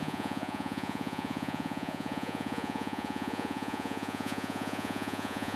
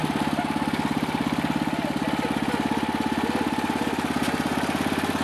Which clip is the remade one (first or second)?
first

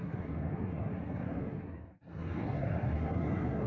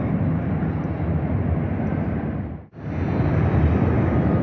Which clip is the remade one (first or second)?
first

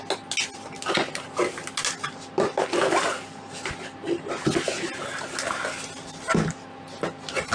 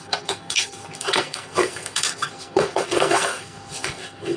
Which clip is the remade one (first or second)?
second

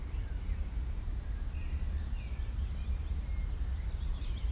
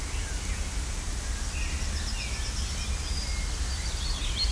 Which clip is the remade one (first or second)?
first